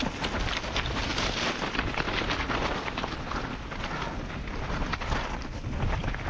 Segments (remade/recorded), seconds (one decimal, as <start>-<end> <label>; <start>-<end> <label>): 0.0-6.3 recorded